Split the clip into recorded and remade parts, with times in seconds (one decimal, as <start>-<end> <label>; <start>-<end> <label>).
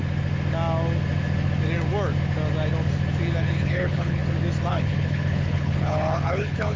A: 0.0-3.4 recorded; 3.4-4.2 remade; 4.2-4.7 recorded; 4.7-6.8 remade